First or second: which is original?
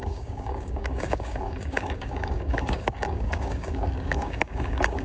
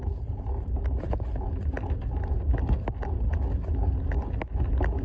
second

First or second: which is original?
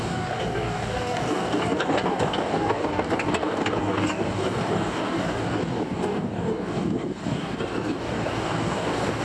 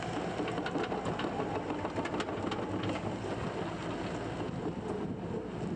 second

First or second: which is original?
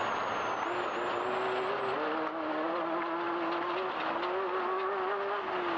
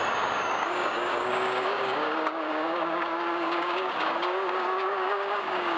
first